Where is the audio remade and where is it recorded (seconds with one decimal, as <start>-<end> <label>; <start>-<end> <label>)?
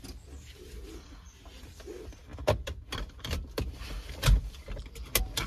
0.0-5.5 recorded